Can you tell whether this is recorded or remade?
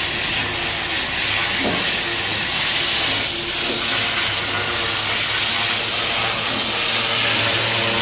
recorded